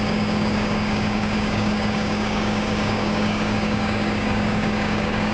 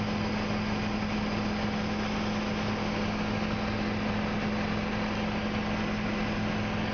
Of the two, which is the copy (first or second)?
first